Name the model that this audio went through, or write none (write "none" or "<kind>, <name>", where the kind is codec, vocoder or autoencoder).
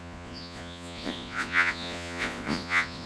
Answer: vocoder, Vocos